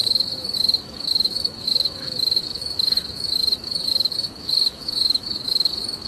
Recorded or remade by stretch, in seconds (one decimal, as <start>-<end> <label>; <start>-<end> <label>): 0.0-6.1 remade